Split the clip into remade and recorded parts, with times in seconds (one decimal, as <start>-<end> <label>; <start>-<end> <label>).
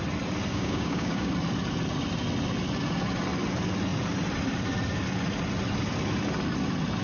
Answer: 0.0-0.5 recorded; 0.5-1.3 remade; 1.3-7.0 recorded